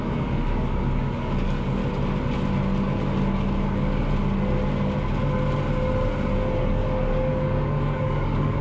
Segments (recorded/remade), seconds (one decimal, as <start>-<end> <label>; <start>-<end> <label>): 0.0-1.8 remade; 1.8-6.6 recorded; 6.6-8.6 remade

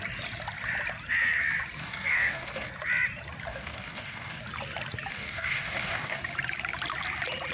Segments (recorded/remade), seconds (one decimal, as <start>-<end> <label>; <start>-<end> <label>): 0.0-1.8 recorded; 1.8-2.7 remade; 2.7-3.5 recorded; 3.5-4.4 remade; 4.4-5.1 recorded; 5.1-6.2 remade; 6.2-7.5 recorded

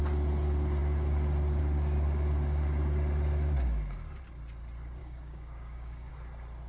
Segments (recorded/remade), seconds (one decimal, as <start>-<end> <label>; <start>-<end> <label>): 0.0-5.0 recorded; 5.0-6.1 remade; 6.1-6.7 recorded